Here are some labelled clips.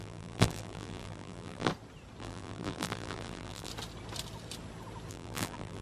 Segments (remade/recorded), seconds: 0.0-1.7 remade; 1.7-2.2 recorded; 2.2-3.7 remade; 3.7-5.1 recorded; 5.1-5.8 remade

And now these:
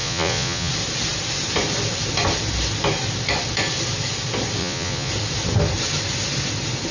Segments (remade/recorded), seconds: 0.0-0.7 remade; 0.7-4.6 recorded; 4.6-5.1 remade; 5.1-6.9 recorded

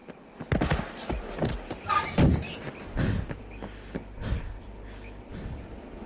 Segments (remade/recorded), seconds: 0.0-6.1 recorded

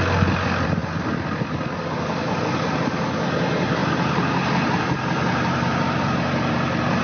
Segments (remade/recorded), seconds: 0.0-3.8 recorded; 3.8-7.0 remade